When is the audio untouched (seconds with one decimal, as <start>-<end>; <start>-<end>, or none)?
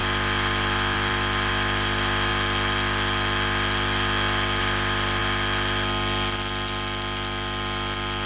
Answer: 2.3-4.6; 5.2-8.3